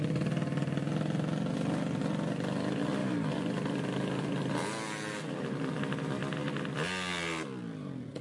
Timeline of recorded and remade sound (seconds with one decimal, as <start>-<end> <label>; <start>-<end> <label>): 0.0-8.2 recorded